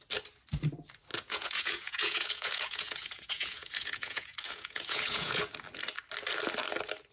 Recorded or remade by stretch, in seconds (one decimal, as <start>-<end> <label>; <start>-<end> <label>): 0.0-1.1 recorded; 1.1-5.4 remade; 5.4-7.1 recorded